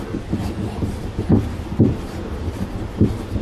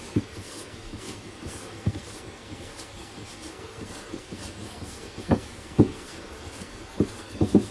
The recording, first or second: first